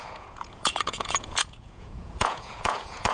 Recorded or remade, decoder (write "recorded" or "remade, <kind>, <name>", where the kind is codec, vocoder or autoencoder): remade, vocoder, Vocos